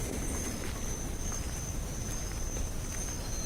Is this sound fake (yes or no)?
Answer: no